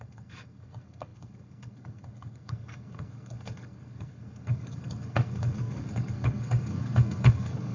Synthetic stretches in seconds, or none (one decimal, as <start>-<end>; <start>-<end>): 0.0-7.7